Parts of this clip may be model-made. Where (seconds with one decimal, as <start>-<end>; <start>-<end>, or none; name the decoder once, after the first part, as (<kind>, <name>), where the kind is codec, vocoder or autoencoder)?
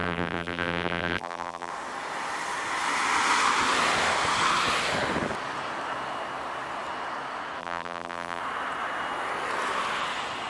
0.0-1.7 (vocoder, BigVGAN v2); 7.6-8.4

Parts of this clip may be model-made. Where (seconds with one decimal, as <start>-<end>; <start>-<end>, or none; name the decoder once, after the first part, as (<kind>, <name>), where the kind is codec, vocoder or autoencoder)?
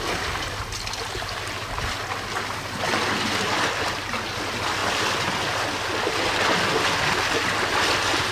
none